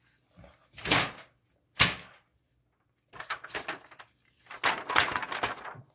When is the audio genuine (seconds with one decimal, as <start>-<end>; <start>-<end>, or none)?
0.0-5.9

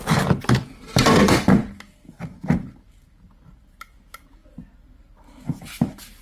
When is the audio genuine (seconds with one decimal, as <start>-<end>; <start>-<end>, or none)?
0.0-6.2

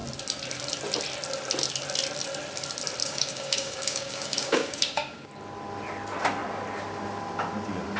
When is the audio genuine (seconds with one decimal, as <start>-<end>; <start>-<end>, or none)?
0.0-3.0; 5.3-8.0

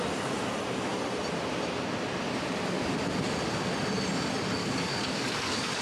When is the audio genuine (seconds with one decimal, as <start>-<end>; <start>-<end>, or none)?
0.0-4.6